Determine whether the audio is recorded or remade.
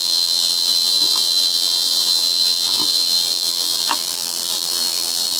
remade